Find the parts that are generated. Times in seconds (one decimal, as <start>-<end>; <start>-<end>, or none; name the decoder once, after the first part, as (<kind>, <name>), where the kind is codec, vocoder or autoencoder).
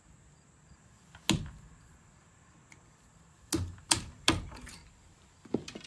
none